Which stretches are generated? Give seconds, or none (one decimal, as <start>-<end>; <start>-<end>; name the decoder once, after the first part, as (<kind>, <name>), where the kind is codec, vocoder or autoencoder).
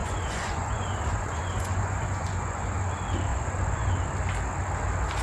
0.0-2.8 (vocoder, Vocos); 3.3-3.9